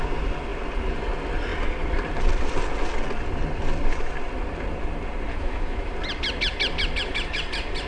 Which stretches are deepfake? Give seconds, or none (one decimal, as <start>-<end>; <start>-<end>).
5.3-5.9